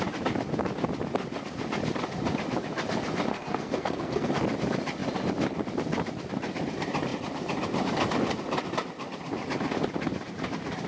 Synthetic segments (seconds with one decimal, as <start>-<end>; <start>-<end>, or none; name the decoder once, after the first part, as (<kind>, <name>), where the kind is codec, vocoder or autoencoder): 3.3-4.3 (codec, SNAC)